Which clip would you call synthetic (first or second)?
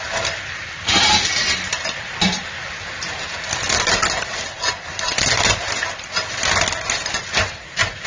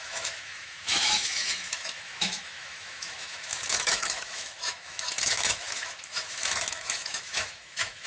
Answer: second